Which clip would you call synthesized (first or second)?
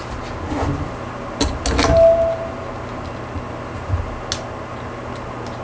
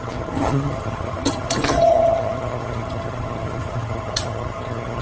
second